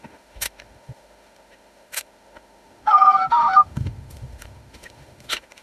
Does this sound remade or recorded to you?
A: remade